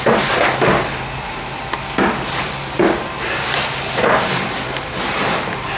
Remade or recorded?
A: recorded